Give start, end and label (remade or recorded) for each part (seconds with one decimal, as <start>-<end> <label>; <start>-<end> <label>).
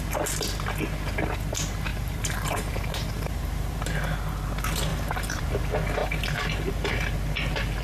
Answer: 0.0-1.9 recorded; 1.9-3.8 remade; 3.8-4.9 recorded; 4.9-5.4 remade; 5.4-6.0 recorded; 6.0-6.7 remade; 6.7-7.8 recorded